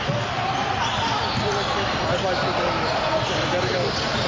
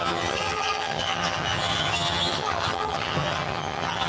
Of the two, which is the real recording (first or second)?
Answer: first